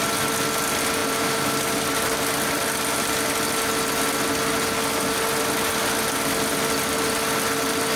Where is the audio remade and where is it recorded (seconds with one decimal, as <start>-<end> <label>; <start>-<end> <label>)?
0.0-8.0 recorded

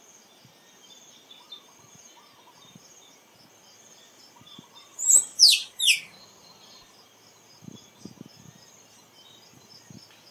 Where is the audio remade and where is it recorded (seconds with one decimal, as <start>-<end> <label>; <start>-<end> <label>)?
0.0-10.3 recorded

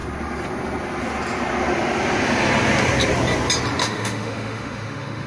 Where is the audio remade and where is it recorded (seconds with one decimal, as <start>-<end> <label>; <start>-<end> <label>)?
0.0-3.8 recorded; 3.8-5.3 remade

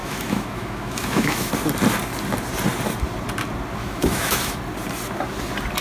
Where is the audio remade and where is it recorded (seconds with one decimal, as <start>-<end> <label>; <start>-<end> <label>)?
0.0-1.5 remade; 1.5-3.8 recorded; 3.8-4.6 remade; 4.6-5.8 recorded

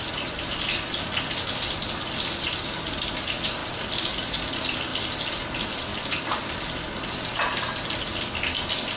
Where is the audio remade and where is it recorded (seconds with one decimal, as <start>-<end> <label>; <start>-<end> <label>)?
0.0-9.0 recorded

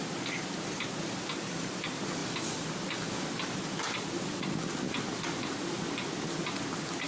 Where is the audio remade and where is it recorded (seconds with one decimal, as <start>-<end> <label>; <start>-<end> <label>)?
0.0-7.1 recorded